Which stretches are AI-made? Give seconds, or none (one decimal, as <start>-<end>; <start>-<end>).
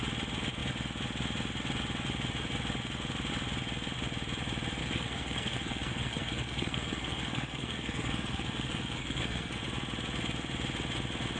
4.8-9.6